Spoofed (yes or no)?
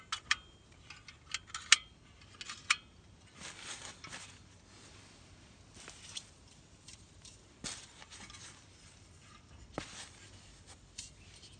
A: no